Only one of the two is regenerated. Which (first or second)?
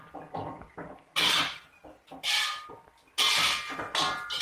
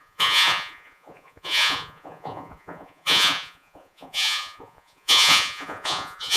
second